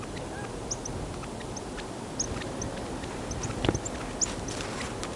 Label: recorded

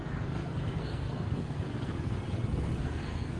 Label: remade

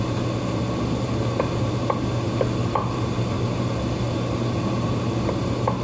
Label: recorded